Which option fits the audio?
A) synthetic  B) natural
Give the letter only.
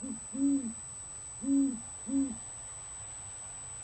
B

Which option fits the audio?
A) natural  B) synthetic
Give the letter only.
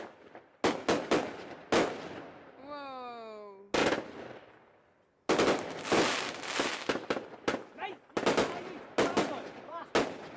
A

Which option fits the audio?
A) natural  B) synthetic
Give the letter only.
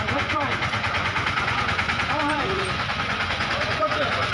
B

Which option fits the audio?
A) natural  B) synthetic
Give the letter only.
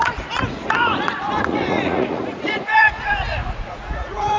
B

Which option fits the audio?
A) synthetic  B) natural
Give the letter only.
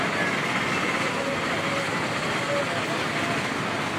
B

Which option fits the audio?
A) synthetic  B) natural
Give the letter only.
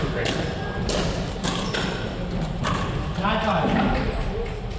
B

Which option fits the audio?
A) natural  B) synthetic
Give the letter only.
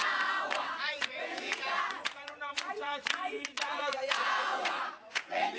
B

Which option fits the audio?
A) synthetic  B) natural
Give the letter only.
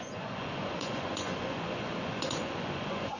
A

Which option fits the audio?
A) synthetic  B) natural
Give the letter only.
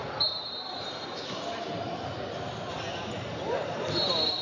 B